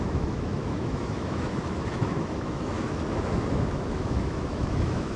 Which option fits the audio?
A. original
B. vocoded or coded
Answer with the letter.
B